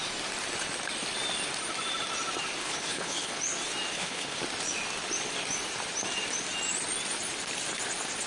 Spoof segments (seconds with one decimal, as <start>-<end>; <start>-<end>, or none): 2.6-3.4; 3.9-4.4